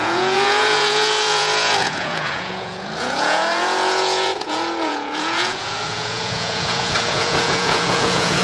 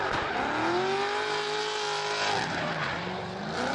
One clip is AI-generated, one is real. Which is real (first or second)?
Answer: second